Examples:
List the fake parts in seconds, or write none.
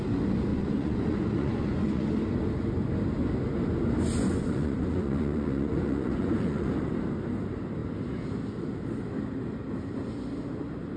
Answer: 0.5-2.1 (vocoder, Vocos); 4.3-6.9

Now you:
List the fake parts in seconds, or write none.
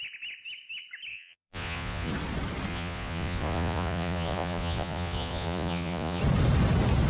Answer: 1.1-2.1 (vocoder, Vocos); 2.7-6.2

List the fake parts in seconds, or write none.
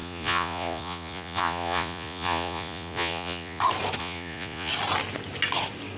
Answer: 0.0-3.6 (vocoder, Vocos); 4.0-4.7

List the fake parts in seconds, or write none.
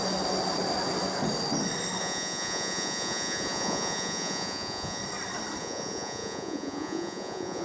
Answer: 2.0-5.0 (vocoder, Vocos); 5.6-7.6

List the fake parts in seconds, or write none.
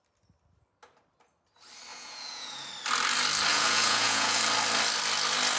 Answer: 1.9-2.7 (vocoder, Vocos); 3.5-4.4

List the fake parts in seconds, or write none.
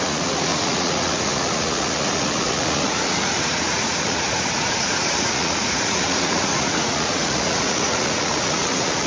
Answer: 0.0-9.1 (vocoder, Vocos)